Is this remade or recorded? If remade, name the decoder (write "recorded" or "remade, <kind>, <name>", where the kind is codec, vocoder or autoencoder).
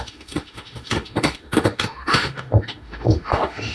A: remade, autoencoder, DAC-VAE